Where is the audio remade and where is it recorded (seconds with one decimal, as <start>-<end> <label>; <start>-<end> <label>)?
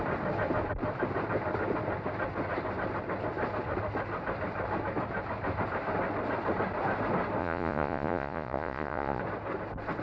0.0-7.4 recorded; 7.4-9.2 remade; 9.2-10.0 recorded